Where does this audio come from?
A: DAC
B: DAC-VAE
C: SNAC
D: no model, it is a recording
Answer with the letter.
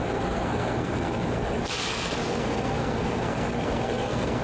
C